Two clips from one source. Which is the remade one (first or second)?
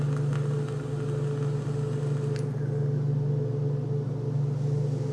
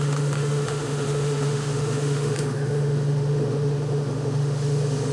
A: second